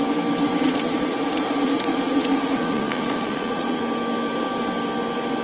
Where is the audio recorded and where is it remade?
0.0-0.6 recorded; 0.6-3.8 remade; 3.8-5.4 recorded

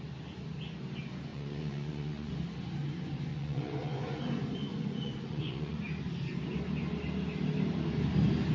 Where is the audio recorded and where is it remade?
0.0-1.3 recorded; 1.3-2.3 remade; 2.3-3.3 recorded; 3.3-4.2 remade; 4.2-4.7 recorded; 4.7-5.8 remade; 5.8-8.5 recorded

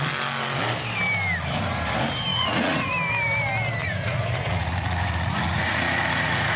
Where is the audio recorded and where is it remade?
0.0-2.3 recorded; 2.3-2.9 remade; 2.9-3.8 recorded; 3.8-6.6 remade